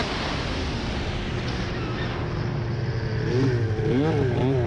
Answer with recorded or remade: recorded